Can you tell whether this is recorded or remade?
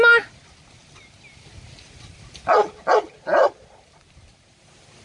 recorded